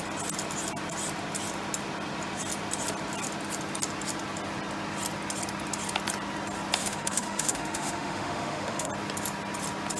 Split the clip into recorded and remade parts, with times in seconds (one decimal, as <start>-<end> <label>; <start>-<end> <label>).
0.0-6.8 recorded; 6.8-8.9 remade; 8.9-10.0 recorded